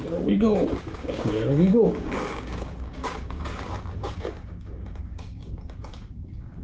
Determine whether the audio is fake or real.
fake